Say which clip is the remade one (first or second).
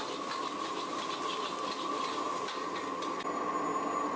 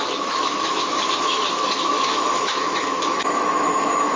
second